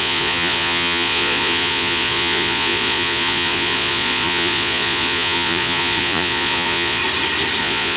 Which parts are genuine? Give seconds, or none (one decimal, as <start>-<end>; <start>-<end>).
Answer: 7.0-7.6